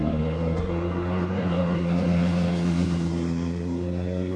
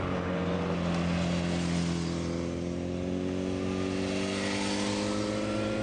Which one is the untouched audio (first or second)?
second